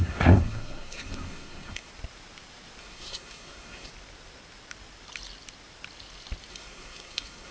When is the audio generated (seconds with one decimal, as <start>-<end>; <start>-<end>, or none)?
0.0-1.9; 2.8-3.9; 6.5-7.5